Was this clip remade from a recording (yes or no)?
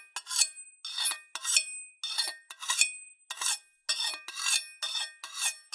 no